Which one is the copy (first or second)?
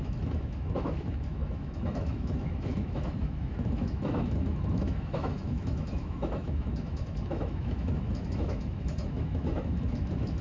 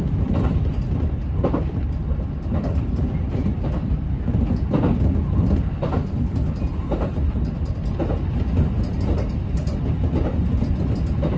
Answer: first